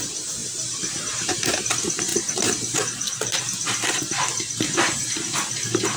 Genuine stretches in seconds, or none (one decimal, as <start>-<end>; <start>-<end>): 0.0-0.4; 1.3-2.1; 3.4-6.0